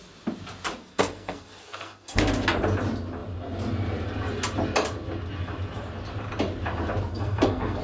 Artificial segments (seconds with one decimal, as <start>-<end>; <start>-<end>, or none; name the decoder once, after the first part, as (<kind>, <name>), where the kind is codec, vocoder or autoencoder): 0.8-2.2 (codec, SNAC); 7.1-7.8